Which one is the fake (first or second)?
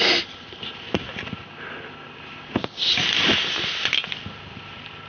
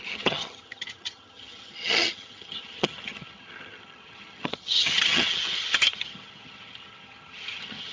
second